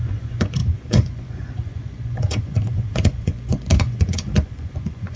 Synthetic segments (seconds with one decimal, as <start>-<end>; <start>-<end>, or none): 0.0-5.2